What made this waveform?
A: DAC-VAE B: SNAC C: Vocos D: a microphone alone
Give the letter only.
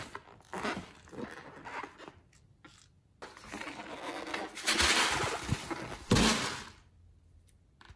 D